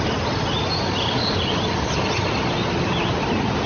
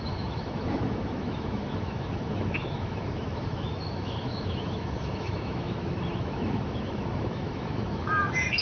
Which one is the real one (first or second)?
first